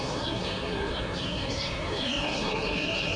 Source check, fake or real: fake